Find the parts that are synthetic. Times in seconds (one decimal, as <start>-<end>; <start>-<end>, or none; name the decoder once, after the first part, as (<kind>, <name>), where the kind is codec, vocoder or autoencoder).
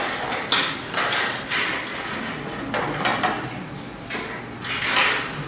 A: none